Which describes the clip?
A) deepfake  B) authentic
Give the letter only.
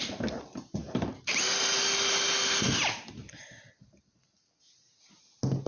B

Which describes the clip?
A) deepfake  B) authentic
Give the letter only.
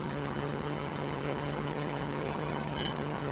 A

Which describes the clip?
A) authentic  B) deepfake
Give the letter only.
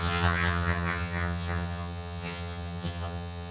B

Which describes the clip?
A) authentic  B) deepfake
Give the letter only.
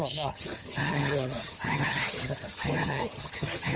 B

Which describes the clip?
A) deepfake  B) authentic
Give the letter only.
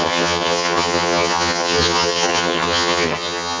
A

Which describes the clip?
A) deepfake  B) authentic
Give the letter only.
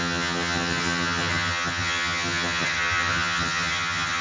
A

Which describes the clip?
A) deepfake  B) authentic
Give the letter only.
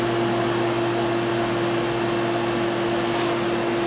B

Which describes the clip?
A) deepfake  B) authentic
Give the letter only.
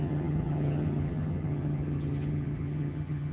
A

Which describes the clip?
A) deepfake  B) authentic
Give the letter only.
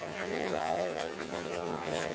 A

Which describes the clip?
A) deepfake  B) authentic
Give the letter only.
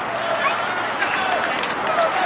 B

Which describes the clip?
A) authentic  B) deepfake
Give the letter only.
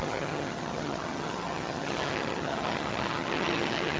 B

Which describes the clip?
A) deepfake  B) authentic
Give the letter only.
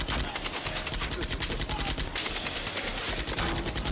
B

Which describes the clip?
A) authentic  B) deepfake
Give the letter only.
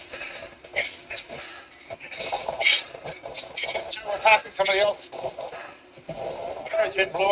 A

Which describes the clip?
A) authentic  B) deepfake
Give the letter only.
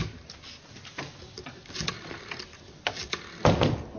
A